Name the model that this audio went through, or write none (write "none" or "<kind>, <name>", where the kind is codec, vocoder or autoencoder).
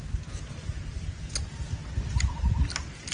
none